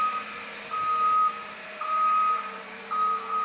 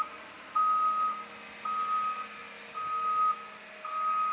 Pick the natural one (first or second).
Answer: second